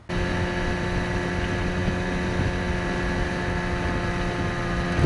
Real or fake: real